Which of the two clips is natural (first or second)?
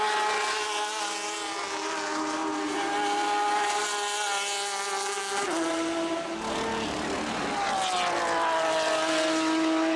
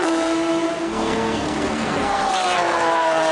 first